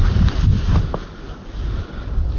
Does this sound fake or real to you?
real